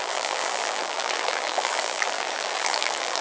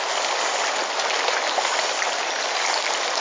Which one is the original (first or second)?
second